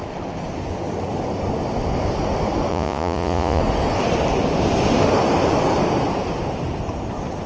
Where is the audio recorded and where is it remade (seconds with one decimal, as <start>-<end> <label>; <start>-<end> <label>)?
0.0-2.7 recorded; 2.7-3.6 remade; 3.6-7.5 recorded